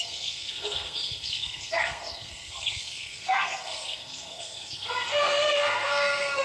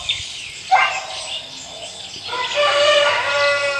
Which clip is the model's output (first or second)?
first